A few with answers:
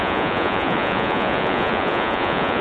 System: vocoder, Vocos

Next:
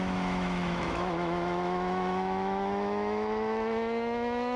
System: autoencoder, DAC-VAE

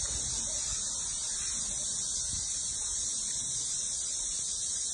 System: none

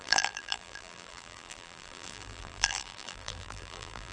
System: vocoder, BigVGAN v2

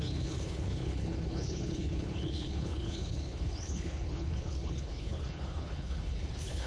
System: codec, HILCodec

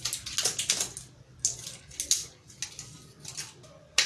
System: none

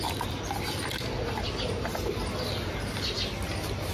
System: none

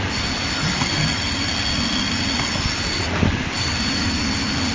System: none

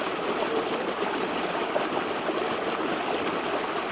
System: none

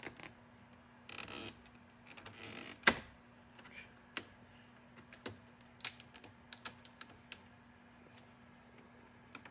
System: none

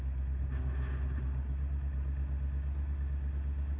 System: none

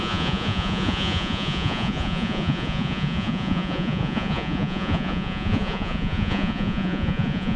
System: vocoder, Vocos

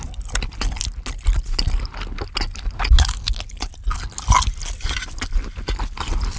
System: none